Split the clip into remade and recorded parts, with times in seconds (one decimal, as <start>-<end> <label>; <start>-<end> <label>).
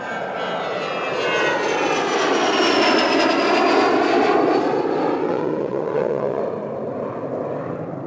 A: 0.0-5.2 recorded; 5.2-6.4 remade; 6.4-8.1 recorded